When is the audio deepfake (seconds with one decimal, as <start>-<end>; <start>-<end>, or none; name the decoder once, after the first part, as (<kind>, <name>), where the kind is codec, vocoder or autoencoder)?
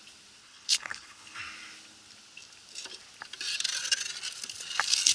0.4-1.4 (codec, HILCodec)